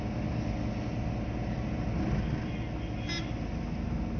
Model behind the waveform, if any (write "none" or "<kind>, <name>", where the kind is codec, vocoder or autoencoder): none